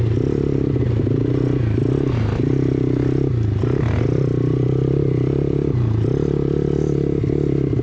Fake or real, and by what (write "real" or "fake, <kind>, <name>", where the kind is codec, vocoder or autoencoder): real